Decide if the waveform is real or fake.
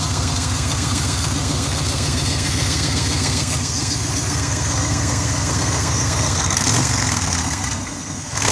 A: fake